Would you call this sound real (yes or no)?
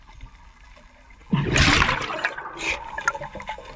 yes